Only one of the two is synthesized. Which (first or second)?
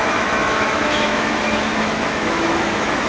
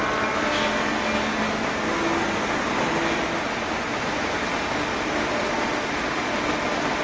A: first